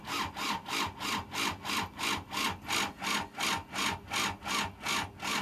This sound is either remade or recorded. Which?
recorded